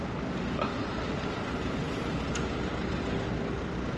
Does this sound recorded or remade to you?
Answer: recorded